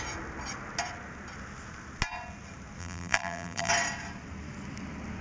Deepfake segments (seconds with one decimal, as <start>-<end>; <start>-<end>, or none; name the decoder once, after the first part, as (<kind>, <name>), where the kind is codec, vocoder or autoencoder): 2.8-3.7 (vocoder, BigVGAN v2)